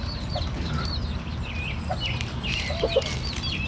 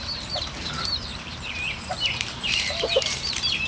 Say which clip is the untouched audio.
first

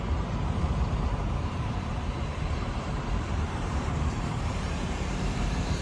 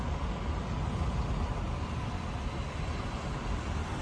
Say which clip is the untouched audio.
second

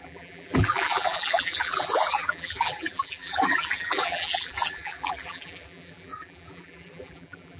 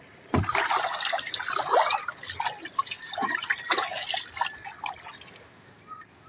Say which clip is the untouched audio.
second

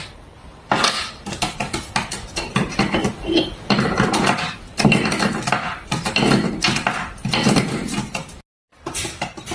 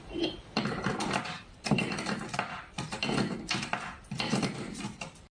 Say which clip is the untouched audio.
first